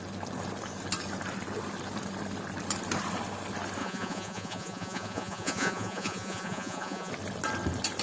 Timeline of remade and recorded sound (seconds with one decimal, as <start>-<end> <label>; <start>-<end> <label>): 0.0-3.8 recorded; 3.8-7.1 remade; 7.1-8.0 recorded